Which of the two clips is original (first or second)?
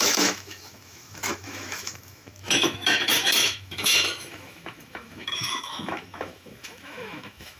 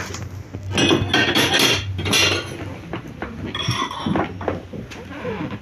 second